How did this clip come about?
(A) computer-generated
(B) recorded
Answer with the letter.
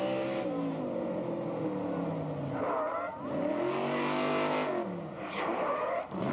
B